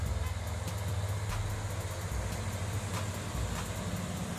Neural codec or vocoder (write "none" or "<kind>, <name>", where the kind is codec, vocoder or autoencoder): none